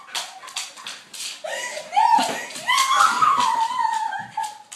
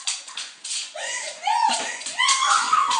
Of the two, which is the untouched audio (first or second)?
first